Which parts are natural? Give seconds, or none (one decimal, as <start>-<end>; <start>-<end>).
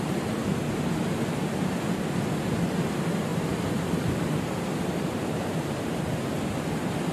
0.4-2.9